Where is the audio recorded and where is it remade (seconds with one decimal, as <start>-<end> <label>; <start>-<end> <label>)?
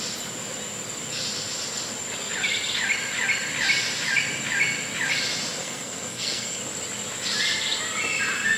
0.0-5.6 recorded; 5.6-6.6 remade; 6.6-8.6 recorded